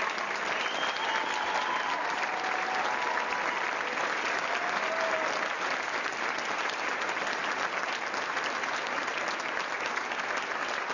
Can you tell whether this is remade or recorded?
recorded